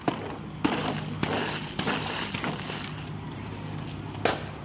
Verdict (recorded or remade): recorded